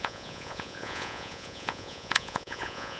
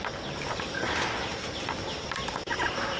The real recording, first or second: second